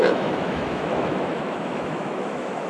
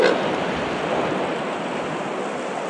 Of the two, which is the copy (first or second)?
first